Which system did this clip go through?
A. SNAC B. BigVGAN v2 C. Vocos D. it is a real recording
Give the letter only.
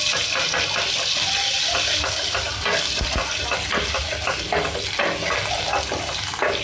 D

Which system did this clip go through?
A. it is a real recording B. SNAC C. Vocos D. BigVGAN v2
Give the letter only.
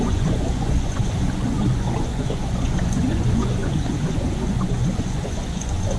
C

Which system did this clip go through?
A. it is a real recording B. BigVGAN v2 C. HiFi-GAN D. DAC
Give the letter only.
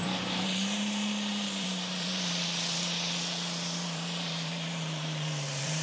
B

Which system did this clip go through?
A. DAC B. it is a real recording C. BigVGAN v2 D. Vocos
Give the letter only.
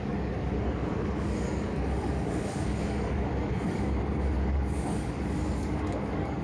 A